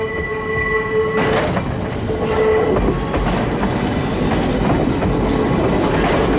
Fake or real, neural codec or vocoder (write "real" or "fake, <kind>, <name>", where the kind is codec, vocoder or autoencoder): real